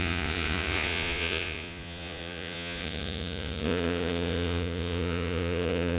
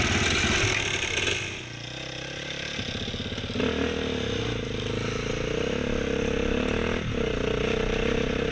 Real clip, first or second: second